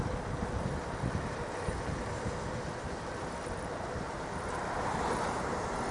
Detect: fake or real real